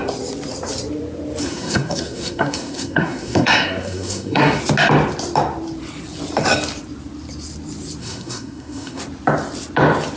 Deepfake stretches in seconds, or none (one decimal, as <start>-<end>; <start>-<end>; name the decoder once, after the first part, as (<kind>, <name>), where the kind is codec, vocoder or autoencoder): 1.4-4.6 (codec, SNAC); 8.0-9.0